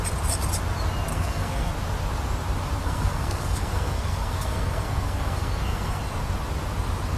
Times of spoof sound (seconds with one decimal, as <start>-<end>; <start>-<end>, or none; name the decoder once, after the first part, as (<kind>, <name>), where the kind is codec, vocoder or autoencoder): 1.1-1.7 (codec, SNAC); 2.8-6.0